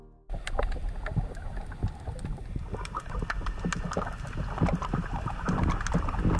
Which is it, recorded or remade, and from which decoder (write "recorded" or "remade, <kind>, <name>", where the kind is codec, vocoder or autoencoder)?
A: recorded